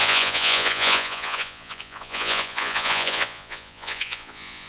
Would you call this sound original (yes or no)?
no